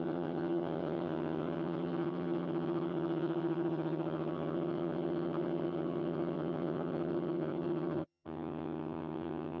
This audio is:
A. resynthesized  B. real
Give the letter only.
A